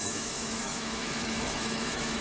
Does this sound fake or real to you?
fake